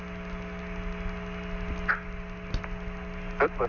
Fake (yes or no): no